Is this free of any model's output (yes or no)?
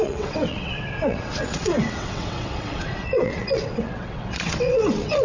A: no